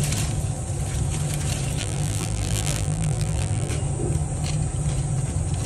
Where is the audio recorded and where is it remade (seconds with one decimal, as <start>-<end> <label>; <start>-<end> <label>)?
0.0-1.8 recorded; 1.8-3.7 remade; 3.7-5.7 recorded